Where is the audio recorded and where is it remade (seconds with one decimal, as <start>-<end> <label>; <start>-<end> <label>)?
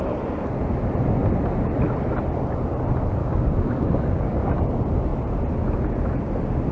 0.0-3.2 recorded; 3.2-4.5 remade; 4.5-6.7 recorded